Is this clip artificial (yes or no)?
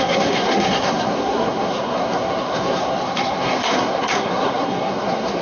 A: yes